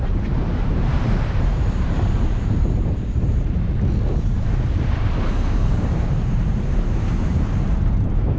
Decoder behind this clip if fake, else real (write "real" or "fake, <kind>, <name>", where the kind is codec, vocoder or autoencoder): fake, vocoder, BigVGAN v2